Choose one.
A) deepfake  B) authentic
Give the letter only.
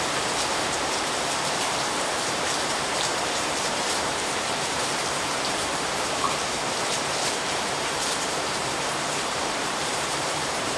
A